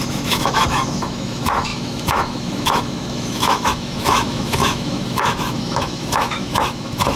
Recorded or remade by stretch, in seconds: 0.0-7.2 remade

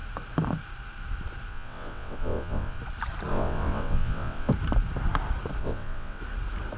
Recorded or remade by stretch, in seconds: 0.0-1.5 recorded; 1.5-2.8 remade; 2.8-3.3 recorded; 3.3-4.5 remade; 4.5-5.6 recorded; 5.6-6.2 remade; 6.2-6.8 recorded

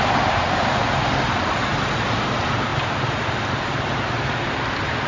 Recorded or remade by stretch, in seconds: 0.0-5.1 recorded

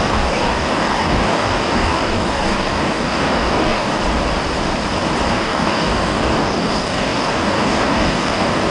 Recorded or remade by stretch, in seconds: 0.0-4.0 remade; 4.0-5.3 recorded; 5.3-8.7 remade